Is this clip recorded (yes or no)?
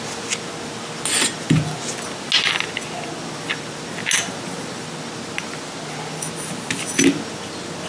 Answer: yes